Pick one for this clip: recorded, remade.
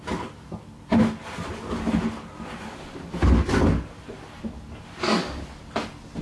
recorded